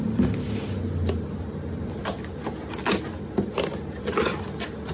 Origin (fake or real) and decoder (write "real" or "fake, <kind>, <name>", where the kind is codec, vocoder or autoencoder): real